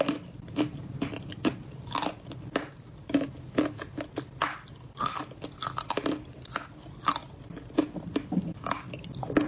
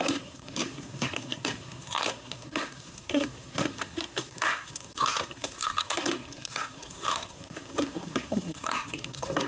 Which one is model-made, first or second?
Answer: second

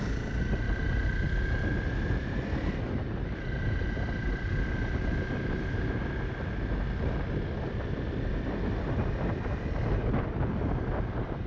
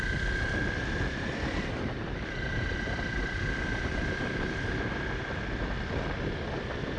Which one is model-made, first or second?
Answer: second